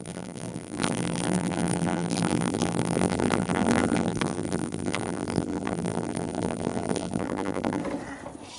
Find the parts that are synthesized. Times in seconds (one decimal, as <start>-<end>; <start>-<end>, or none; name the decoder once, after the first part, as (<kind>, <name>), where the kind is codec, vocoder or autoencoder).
0.0-7.8 (vocoder, BigVGAN v2)